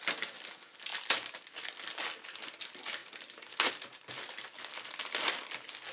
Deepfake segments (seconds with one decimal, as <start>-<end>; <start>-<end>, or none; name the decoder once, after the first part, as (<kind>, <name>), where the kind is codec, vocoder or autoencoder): none